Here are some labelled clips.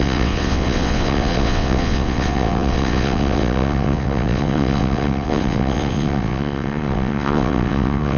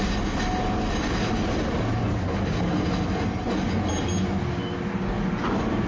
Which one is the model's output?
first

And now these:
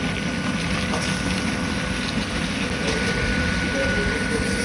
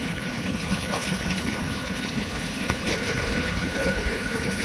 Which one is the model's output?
second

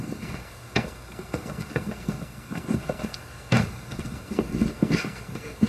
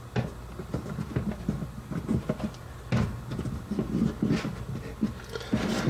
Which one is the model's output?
first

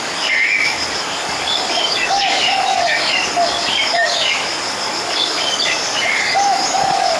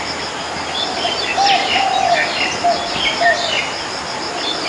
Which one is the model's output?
first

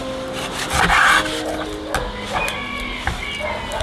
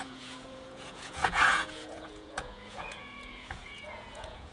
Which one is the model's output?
second